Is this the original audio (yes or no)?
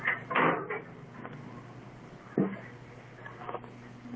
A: yes